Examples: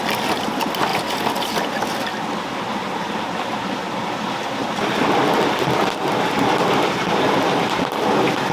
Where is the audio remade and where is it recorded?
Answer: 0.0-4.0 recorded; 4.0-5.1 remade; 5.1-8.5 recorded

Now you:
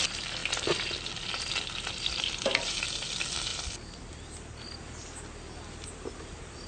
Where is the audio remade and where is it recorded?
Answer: 0.0-6.7 recorded

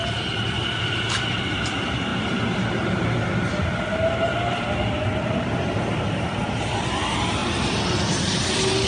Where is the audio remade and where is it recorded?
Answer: 0.0-8.9 recorded